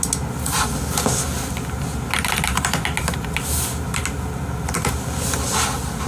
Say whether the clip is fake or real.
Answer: real